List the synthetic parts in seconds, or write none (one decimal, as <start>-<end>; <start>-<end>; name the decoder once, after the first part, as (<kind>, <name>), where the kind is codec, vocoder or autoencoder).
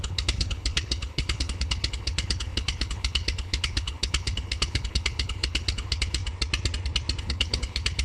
0.0-6.2 (codec, HILCodec); 7.2-8.0